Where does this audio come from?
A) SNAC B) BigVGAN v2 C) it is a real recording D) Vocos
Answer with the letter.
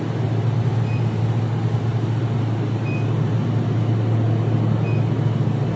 C